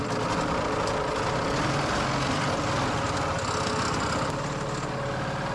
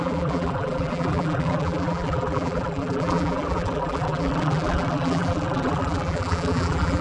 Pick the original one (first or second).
first